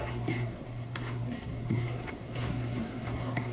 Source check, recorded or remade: remade